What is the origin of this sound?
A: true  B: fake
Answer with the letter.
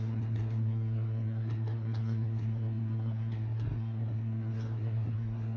B